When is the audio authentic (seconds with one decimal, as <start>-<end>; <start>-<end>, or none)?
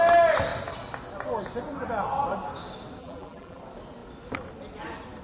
0.0-3.0; 3.6-5.2